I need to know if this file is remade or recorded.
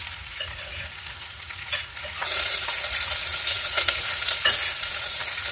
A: remade